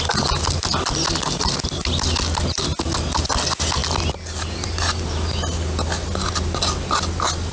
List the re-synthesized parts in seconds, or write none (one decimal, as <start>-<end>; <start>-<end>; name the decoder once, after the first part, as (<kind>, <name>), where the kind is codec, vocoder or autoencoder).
none